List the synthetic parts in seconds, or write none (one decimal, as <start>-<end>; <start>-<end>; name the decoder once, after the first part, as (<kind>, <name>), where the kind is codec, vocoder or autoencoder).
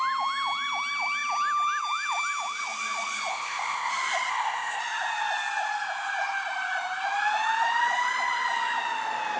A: 3.3-3.9 (codec, ZipCodec); 4.3-4.8